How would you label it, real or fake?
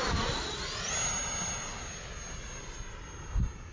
real